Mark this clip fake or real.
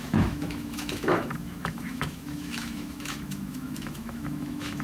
fake